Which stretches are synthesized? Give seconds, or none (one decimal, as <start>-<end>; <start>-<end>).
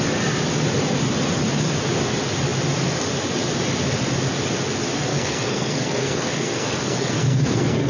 5.1-7.9